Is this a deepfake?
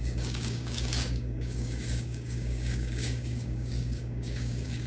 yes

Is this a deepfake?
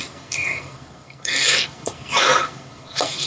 yes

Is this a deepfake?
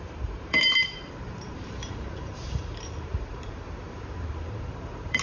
yes